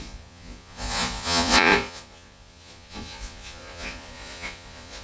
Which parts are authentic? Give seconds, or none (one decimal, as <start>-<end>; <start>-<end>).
none